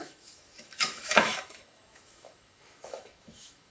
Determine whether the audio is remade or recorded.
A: remade